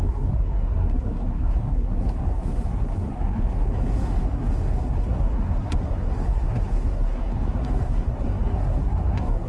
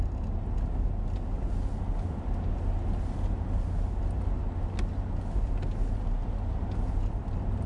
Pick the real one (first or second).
second